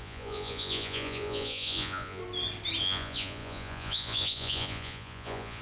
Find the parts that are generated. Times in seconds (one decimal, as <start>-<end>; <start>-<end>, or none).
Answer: 0.0-2.2; 2.8-5.6